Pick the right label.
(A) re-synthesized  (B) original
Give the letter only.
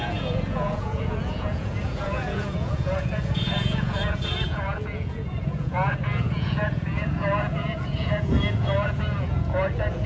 A